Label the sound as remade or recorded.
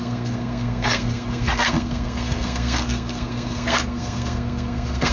remade